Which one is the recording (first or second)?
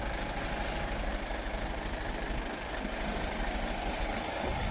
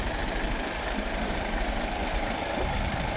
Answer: first